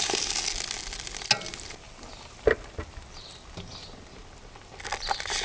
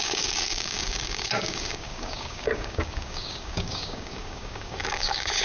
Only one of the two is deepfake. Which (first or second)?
second